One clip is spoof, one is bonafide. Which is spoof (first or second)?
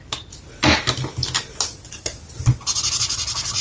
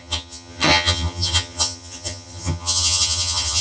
second